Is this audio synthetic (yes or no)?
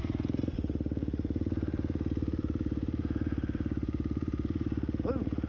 yes